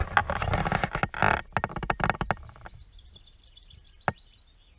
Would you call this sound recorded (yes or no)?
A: yes